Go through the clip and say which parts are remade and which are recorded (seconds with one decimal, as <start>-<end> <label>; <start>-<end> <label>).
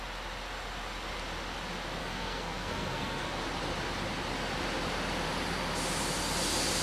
0.0-2.0 recorded; 2.0-3.4 remade; 3.4-6.8 recorded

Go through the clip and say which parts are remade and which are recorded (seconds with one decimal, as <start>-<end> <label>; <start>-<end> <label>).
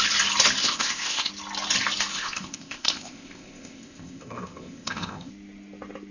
0.0-0.6 recorded; 0.6-1.3 remade; 1.3-2.1 recorded; 2.1-5.3 remade; 5.3-6.1 recorded